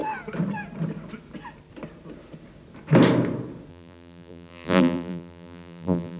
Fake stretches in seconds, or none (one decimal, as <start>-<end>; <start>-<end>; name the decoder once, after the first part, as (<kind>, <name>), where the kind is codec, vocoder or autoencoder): 3.7-6.2 (vocoder, BigVGAN v2)